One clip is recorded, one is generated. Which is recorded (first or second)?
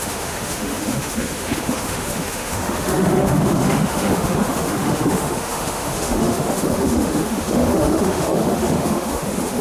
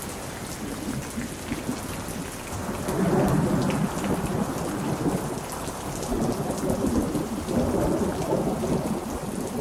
second